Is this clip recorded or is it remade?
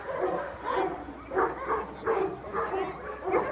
recorded